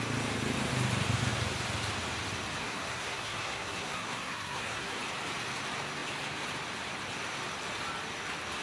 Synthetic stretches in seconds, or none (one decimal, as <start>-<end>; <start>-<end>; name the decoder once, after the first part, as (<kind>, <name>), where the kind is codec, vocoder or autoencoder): 2.6-5.0 (codec, SNAC)